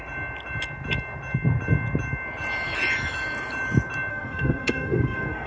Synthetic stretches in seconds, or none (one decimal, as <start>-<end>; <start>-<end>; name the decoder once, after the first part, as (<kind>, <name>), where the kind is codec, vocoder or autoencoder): 4.1-5.5 (codec, SNAC)